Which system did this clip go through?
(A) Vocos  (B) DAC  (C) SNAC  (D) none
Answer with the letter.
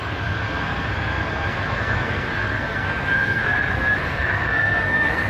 C